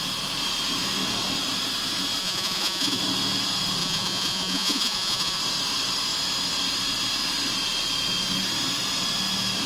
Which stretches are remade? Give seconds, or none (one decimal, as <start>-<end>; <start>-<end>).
2.2-3.0; 3.8-5.4